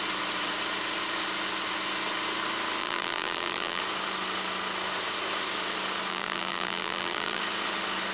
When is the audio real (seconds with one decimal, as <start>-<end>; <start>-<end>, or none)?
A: 0.0-2.8; 3.8-6.1; 7.4-8.1